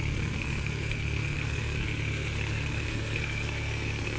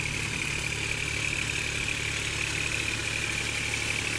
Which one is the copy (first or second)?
first